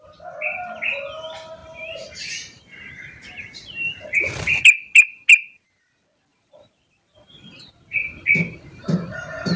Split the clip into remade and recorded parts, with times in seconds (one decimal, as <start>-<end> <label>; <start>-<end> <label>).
0.0-1.6 recorded; 1.6-4.6 remade; 4.6-6.3 recorded; 6.3-9.2 remade; 9.2-9.6 recorded